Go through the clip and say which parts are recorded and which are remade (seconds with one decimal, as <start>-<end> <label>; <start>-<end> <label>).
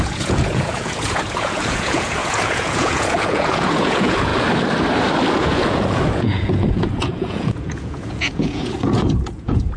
0.0-4.3 remade; 4.3-5.3 recorded; 5.3-9.8 remade